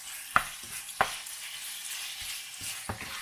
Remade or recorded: recorded